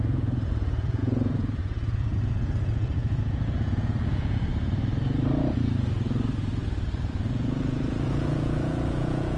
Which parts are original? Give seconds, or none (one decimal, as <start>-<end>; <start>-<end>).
4.5-7.0